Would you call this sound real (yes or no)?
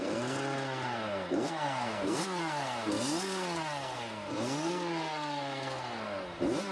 no